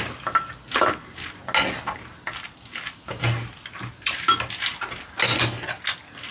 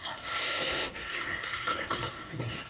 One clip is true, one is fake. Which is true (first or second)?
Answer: first